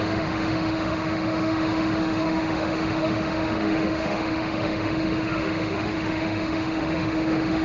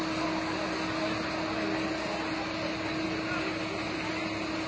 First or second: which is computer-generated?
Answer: first